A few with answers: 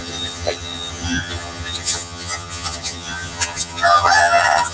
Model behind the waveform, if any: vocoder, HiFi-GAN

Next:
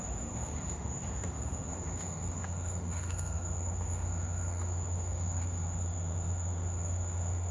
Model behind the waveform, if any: autoencoder, DAC-VAE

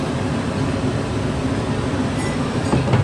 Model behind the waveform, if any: none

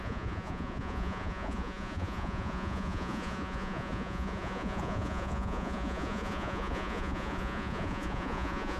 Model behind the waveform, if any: vocoder, Vocos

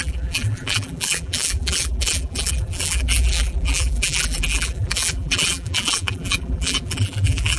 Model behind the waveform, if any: vocoder, BigVGAN v2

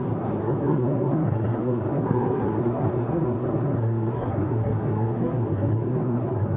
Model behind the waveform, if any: codec, SNAC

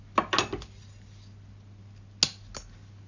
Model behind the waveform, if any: none